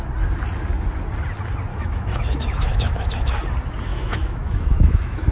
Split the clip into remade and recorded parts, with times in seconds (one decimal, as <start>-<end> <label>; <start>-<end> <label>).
0.0-1.7 recorded; 1.7-3.3 remade; 3.3-3.9 recorded; 3.9-5.3 remade